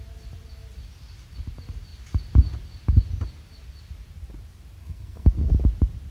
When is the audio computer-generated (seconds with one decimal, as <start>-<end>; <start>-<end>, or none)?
4.8-5.5